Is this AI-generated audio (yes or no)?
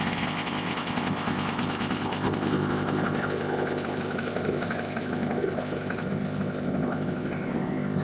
yes